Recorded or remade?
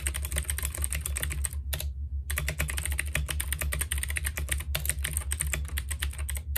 recorded